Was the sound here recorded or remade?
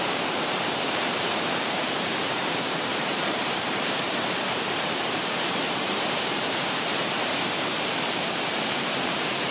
remade